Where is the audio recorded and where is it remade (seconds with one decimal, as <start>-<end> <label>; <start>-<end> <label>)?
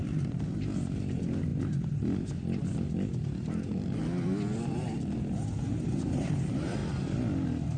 0.0-1.5 remade; 1.5-5.7 recorded; 5.7-6.8 remade; 6.8-7.8 recorded